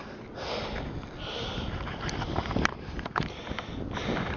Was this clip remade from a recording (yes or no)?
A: no